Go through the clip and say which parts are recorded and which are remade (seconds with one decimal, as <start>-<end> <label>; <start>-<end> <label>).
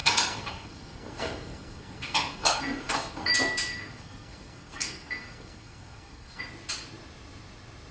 0.0-3.3 remade; 3.3-3.7 recorded; 3.7-6.4 remade; 6.4-7.9 recorded